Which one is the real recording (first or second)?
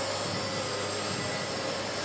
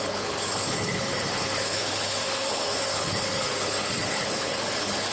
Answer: first